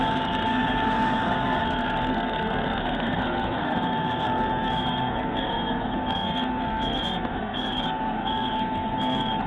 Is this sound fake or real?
fake